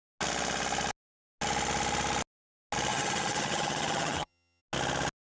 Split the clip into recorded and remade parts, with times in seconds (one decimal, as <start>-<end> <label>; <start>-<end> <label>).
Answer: 0.0-2.9 recorded; 2.9-4.6 remade; 4.6-5.3 recorded